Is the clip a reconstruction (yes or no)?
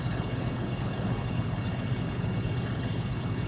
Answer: yes